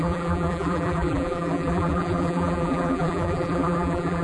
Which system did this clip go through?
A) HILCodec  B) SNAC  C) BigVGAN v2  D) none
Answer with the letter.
C